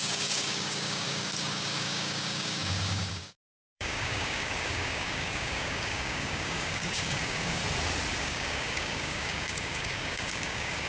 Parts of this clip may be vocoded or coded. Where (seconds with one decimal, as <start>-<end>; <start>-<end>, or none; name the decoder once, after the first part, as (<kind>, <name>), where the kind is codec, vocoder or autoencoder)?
0.0-7.6 (codec, DAC); 8.2-10.9